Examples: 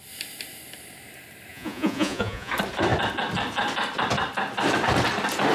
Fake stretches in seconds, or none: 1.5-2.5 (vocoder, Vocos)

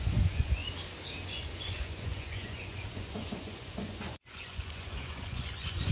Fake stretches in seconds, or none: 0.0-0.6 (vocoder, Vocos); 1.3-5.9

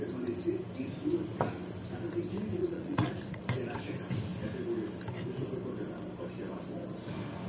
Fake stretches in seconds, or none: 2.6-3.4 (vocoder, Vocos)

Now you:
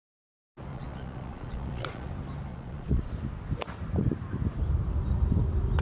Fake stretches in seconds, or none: 0.7-2.1 (vocoder, Vocos); 2.5-3.1

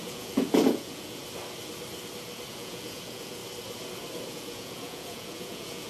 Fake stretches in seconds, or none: 0.0-1.2 (vocoder, Vocos); 2.5-3.4; 4.3-5.9

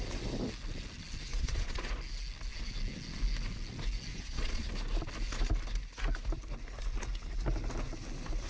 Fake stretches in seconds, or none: 1.3-1.9 (vocoder, Vocos); 4.1-4.7

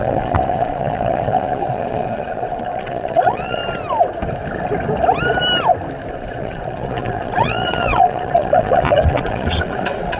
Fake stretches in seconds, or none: 0.0-3.6 (vocoder, Vocos); 6.1-10.2

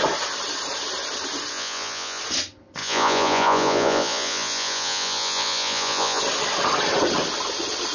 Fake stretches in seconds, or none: 1.5-2.2 (vocoder, Vocos); 2.8-6.2